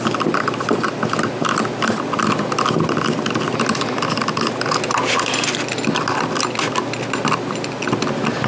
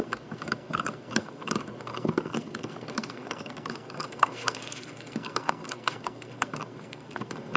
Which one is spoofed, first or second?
second